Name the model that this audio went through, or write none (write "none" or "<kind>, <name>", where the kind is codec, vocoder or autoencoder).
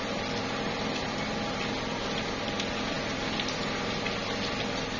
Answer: none